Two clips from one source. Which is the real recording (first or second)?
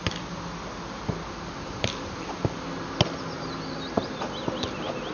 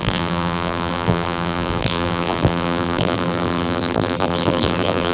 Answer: first